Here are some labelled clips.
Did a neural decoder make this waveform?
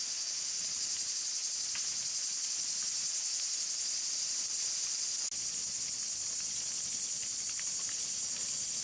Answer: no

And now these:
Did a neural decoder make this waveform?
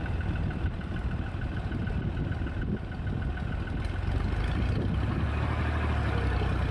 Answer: no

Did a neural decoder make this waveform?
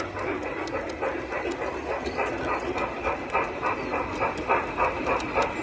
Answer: no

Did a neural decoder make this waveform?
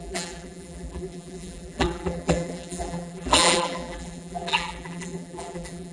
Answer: yes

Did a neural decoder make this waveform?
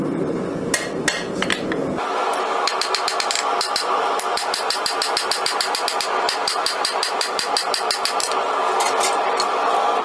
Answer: no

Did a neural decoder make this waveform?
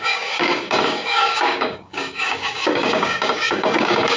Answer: yes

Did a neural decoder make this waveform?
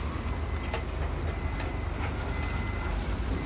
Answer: no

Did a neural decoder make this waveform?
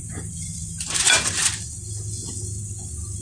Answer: no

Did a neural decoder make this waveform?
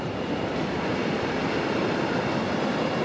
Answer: yes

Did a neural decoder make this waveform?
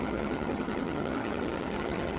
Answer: yes